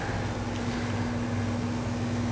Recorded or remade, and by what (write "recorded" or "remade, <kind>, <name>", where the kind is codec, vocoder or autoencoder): recorded